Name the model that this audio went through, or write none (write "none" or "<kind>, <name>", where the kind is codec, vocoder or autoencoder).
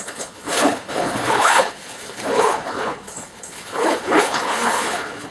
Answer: codec, HILCodec